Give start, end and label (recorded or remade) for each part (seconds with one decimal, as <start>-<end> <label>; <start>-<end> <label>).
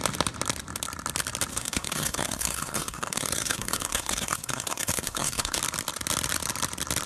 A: 0.0-1.5 recorded; 1.5-5.6 remade; 5.6-7.1 recorded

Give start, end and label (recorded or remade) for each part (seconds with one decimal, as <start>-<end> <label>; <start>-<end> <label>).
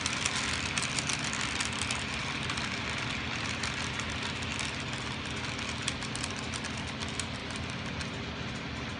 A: 0.0-9.0 recorded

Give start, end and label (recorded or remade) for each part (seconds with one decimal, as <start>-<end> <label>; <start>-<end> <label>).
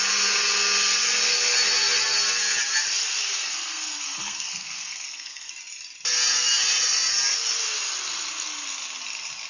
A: 0.0-3.2 recorded; 3.2-5.5 remade; 5.5-9.5 recorded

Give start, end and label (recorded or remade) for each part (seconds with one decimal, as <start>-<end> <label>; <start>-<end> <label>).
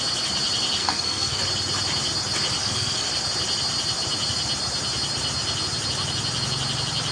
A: 0.0-0.8 recorded; 0.8-1.4 remade; 1.4-2.6 recorded; 2.6-3.1 remade; 3.1-7.1 recorded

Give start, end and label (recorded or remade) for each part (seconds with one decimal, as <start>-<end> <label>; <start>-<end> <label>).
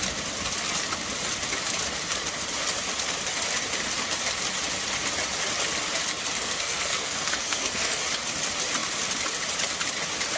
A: 0.0-6.4 recorded; 6.4-8.0 remade; 8.0-10.4 recorded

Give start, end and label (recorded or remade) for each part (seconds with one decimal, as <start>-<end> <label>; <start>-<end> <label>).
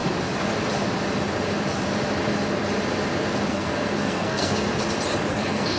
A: 0.0-3.5 recorded; 3.5-4.8 remade; 4.8-5.3 recorded; 5.3-5.8 remade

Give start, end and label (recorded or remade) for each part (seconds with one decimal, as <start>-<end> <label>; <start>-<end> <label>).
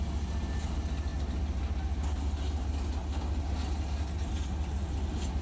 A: 0.0-5.4 recorded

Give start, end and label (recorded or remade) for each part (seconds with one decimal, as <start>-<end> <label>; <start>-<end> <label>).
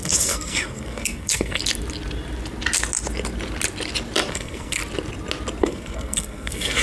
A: 0.0-1.6 remade; 1.6-4.3 recorded; 4.3-4.8 remade; 4.8-5.6 recorded; 5.6-6.8 remade